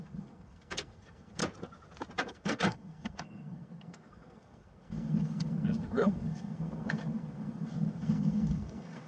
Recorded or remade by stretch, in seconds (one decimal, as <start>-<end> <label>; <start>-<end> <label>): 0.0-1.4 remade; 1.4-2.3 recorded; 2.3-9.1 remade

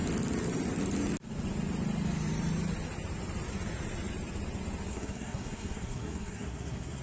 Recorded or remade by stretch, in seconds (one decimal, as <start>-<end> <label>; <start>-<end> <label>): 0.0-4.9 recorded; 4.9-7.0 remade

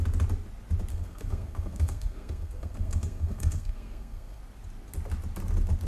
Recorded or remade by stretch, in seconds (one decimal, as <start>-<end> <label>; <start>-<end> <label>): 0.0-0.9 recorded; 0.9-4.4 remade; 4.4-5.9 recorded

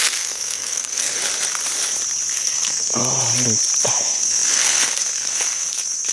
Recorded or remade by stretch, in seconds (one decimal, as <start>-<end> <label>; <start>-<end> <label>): 0.0-1.2 remade; 1.2-2.3 recorded; 2.3-3.0 remade; 3.0-3.9 recorded; 3.9-6.1 remade

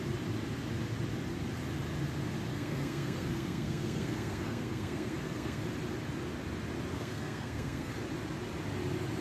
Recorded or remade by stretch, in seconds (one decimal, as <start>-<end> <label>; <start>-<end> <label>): 0.0-2.5 recorded; 2.5-5.6 remade; 5.6-6.9 recorded; 6.9-7.9 remade; 7.9-9.2 recorded

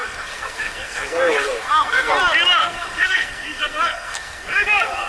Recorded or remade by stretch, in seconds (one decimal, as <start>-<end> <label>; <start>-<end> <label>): 0.0-2.1 remade; 2.1-2.6 recorded; 2.6-5.1 remade